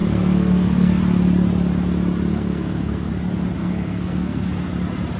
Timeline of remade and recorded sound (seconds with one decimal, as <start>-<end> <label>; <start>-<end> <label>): 0.0-1.0 remade; 1.0-2.3 recorded; 2.3-3.1 remade; 3.1-3.6 recorded; 3.6-4.6 remade; 4.6-5.2 recorded